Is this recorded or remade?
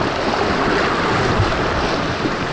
recorded